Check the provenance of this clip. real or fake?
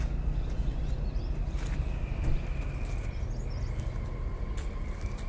real